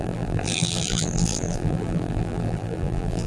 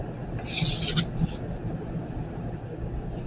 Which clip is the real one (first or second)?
second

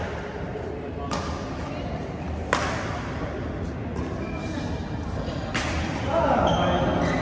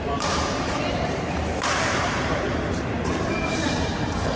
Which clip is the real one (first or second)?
first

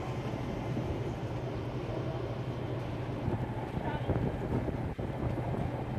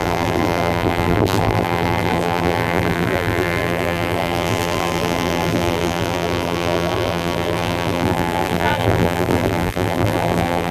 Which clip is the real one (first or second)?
first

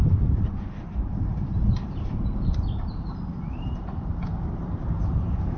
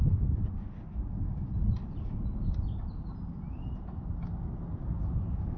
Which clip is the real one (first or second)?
second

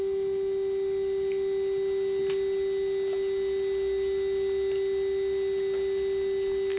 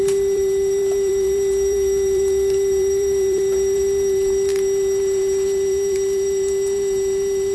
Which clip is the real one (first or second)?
first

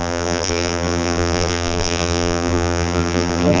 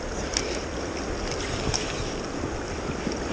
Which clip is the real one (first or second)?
second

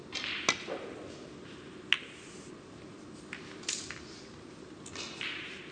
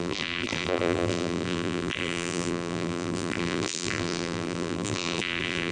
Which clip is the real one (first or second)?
first